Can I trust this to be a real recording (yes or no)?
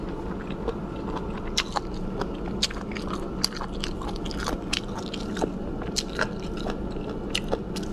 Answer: yes